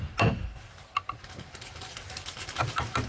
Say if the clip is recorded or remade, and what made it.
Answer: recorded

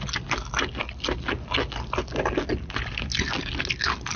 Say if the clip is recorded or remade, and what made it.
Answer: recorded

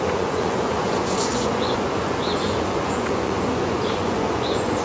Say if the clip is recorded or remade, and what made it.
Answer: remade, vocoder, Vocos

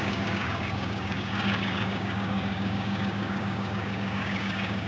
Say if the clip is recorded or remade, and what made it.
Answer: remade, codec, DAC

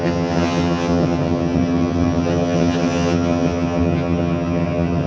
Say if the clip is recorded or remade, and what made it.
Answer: remade, vocoder, HiFi-GAN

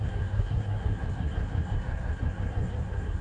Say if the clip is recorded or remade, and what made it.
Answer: remade, codec, SNAC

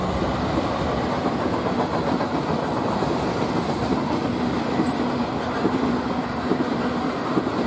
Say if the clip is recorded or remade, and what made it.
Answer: recorded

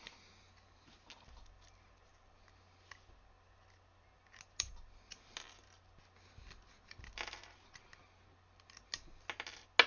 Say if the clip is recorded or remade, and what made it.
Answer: recorded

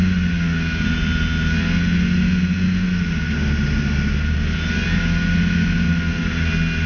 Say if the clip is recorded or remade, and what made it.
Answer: recorded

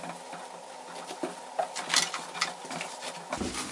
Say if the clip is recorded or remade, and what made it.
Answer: recorded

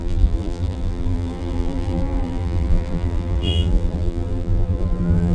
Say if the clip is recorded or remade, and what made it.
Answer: remade, vocoder, BigVGAN v2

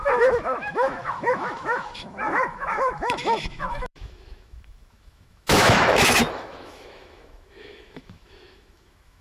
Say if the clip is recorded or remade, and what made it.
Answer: remade, autoencoder, DAC-VAE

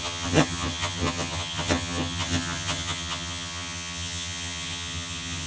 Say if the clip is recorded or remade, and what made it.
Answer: remade, vocoder, HiFi-GAN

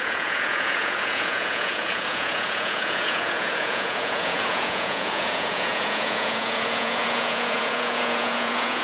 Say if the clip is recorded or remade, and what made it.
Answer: remade, vocoder, Vocos